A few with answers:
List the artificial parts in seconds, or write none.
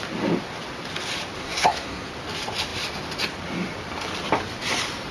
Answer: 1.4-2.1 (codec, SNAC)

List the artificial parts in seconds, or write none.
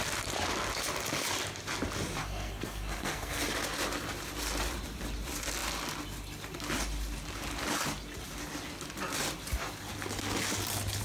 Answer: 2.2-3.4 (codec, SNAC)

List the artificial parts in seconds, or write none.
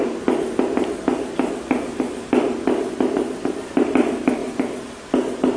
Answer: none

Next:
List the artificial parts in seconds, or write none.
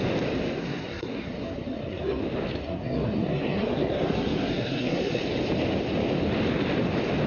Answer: 0.6-2.2 (codec, SNAC); 2.6-5.2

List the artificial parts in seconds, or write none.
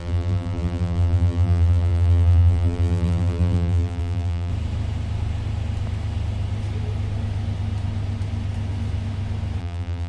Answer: 0.0-4.5 (vocoder, BigVGAN v2); 9.6-10.1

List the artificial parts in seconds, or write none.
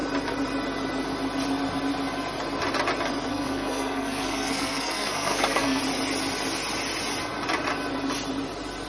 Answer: 3.3-5.8 (codec, SNAC)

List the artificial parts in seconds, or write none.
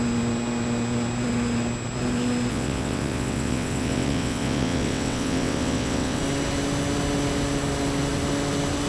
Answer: 2.5-6.2 (vocoder, WaveNeXt)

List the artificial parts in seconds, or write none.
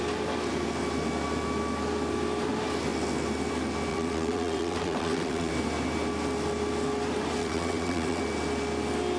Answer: 3.9-5.5 (vocoder, WaveNeXt); 7.4-8.2